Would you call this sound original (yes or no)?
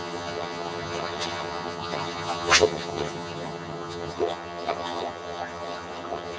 no